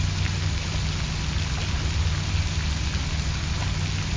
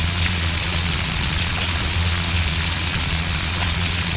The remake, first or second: second